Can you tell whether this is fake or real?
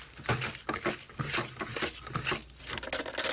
real